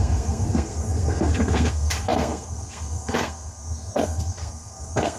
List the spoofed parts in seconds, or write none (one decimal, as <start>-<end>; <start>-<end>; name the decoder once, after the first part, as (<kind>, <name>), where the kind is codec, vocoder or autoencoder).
0.0-5.2 (codec, SNAC)